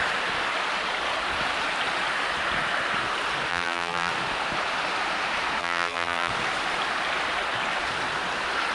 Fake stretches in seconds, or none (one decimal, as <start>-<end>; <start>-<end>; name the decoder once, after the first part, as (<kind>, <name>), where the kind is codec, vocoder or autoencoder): 3.5-4.1 (vocoder, BigVGAN v2); 5.6-6.3